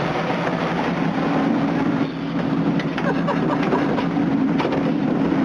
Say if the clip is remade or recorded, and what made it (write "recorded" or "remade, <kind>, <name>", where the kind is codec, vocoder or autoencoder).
recorded